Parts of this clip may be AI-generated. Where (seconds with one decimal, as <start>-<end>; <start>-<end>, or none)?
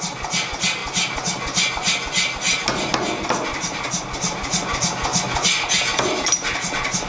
none